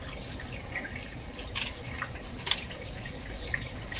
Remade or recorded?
recorded